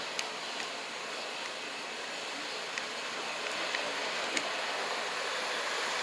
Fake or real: real